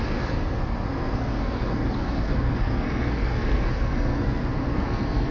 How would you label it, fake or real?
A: fake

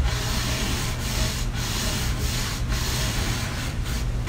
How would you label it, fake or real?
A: fake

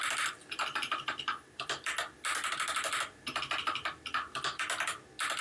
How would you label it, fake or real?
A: real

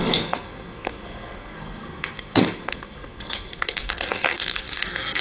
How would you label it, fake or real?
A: fake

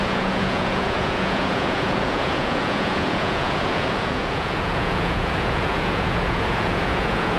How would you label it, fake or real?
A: fake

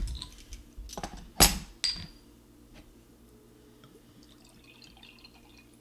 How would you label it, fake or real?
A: real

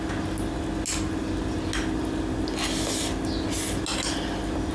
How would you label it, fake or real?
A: real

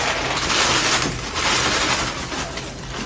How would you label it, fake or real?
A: real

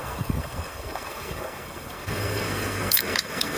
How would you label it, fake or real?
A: fake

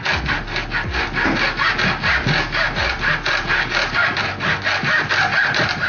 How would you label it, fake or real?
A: real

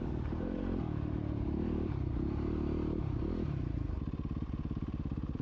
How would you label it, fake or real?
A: fake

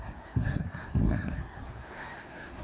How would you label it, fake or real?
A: fake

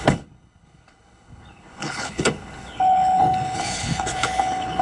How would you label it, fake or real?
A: fake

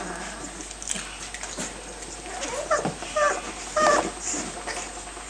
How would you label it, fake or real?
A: real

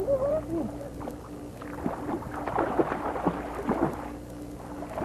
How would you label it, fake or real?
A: real